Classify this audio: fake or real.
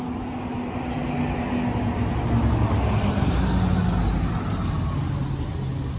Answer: real